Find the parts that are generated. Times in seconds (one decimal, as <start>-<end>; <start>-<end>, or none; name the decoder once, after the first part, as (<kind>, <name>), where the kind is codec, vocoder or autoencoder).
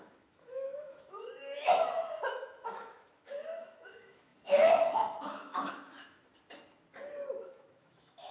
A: 0.0-1.7 (autoencoder, DAC-VAE); 2.3-6.3; 7.4-8.3